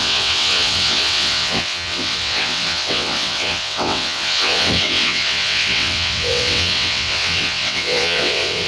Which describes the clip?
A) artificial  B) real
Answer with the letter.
A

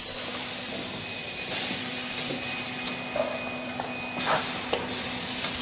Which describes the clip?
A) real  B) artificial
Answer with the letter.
A